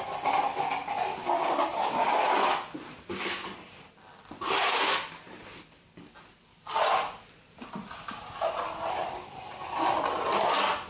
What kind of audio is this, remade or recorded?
recorded